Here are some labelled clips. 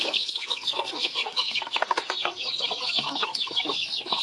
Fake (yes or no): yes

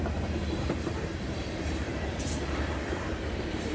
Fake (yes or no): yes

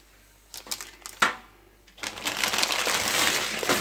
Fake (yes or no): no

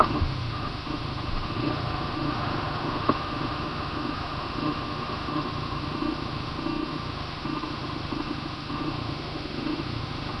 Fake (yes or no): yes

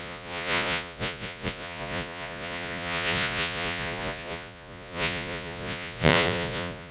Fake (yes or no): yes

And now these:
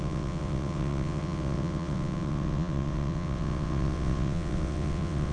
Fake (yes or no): yes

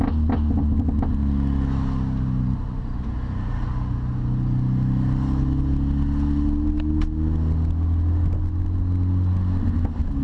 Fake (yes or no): no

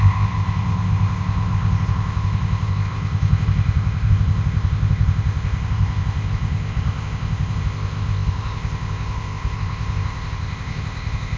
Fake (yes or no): yes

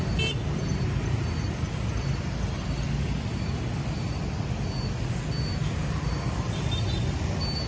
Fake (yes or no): no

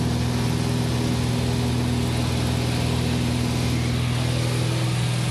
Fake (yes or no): no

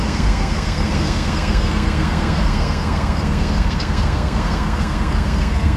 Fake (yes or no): yes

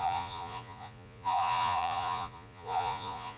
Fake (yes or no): yes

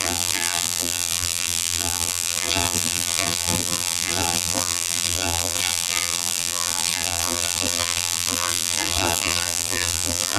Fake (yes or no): yes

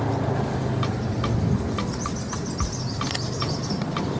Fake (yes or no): no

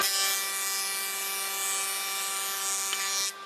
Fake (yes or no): no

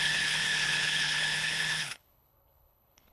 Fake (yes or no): yes